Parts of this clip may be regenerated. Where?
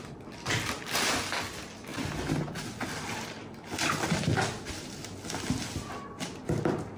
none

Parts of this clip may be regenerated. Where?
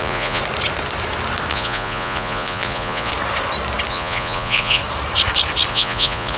0.0-0.4 (vocoder, Vocos); 1.5-3.1; 3.9-4.8; 5.7-6.4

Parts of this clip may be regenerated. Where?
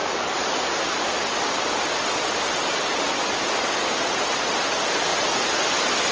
none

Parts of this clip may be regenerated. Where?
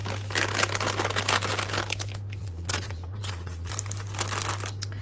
2.4-3.7 (vocoder, Vocos)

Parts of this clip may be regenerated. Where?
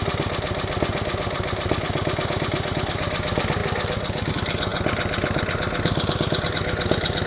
none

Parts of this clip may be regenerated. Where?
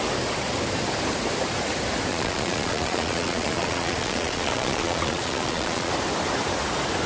2.1-5.9 (vocoder, Vocos)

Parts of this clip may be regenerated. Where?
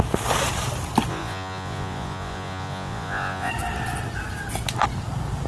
1.1-3.5 (vocoder, Vocos)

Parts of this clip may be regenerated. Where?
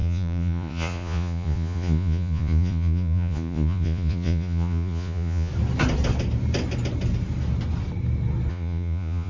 0.0-5.5 (vocoder, Vocos); 8.5-9.3